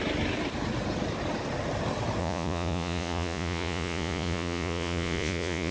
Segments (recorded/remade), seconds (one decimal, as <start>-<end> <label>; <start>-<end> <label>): 0.0-2.2 recorded; 2.2-5.7 remade